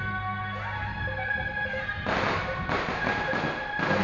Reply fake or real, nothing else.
real